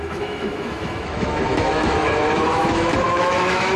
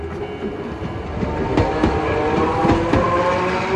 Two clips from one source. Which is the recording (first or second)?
second